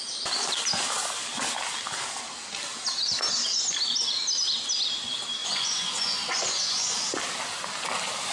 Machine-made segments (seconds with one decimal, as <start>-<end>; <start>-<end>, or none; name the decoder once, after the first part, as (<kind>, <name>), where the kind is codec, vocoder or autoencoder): 5.4-6.9 (vocoder, Vocos)